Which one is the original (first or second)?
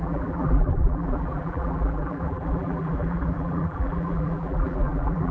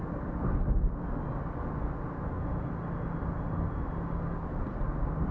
second